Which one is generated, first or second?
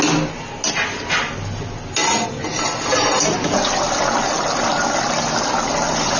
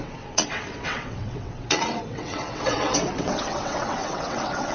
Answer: second